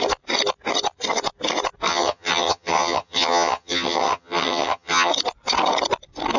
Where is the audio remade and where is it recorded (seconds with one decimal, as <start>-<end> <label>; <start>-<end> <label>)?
0.0-1.9 recorded; 1.9-5.1 remade; 5.1-6.4 recorded